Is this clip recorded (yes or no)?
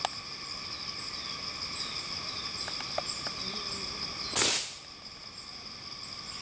yes